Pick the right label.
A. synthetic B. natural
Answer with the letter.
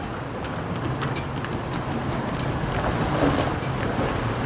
B